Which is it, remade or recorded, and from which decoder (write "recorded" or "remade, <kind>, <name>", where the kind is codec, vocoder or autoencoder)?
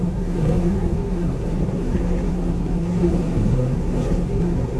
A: remade, codec, SNAC